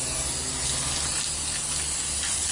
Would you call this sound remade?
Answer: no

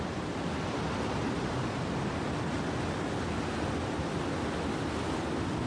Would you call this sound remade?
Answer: no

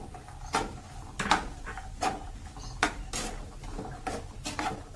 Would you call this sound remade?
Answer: no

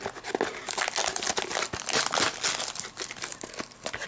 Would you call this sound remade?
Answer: no